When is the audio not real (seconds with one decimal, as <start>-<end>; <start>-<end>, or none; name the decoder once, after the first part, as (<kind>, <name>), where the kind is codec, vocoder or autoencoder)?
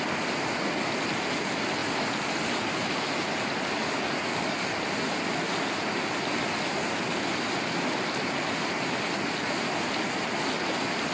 none